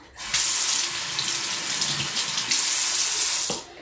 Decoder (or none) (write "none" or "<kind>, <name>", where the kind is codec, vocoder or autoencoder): none